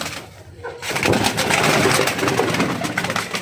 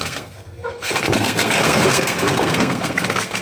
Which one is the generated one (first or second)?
second